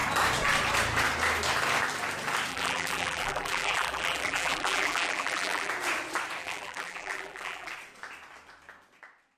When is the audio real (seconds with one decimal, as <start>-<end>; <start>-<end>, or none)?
0.0-2.5; 5.7-6.4; 7.7-9.4